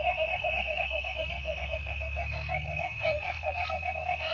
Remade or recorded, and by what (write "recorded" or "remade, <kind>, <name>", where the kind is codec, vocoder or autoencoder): remade, codec, SNAC